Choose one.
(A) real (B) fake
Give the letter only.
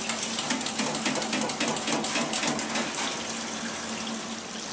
A